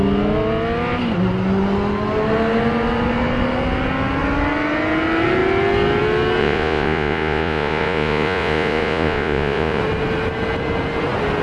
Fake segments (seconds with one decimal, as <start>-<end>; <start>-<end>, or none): 6.4-9.8